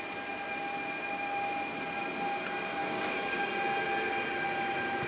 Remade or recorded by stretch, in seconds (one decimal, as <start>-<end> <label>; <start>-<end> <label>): 0.0-2.8 recorded; 2.8-3.4 remade; 3.4-5.1 recorded

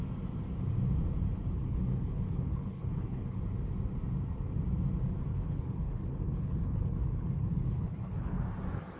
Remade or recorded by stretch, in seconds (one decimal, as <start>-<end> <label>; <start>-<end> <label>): 0.0-1.6 recorded; 1.6-3.4 remade; 3.4-5.3 recorded; 5.3-8.4 remade; 8.4-9.0 recorded

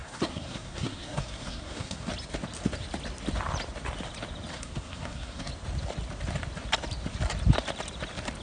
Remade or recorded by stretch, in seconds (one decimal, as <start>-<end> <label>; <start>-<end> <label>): 0.0-2.1 remade; 2.1-4.5 recorded; 4.5-5.5 remade; 5.5-8.4 recorded

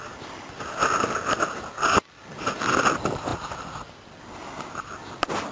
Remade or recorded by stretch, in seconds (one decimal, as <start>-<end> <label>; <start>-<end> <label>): 0.0-5.5 recorded

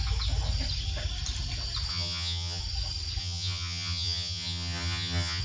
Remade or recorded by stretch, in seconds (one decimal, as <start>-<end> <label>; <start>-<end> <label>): 0.0-1.9 recorded; 1.9-2.6 remade; 2.6-3.2 recorded; 3.2-5.4 remade

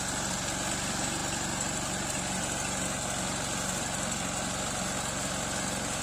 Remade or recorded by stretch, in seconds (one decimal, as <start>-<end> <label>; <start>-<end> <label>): 0.0-6.0 recorded

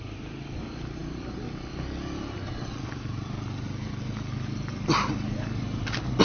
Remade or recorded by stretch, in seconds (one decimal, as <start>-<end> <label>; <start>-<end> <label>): 0.0-6.2 recorded

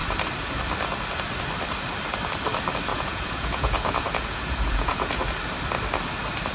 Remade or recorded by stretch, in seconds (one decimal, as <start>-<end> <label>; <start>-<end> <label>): 0.0-2.9 recorded; 2.9-5.2 remade; 5.2-6.5 recorded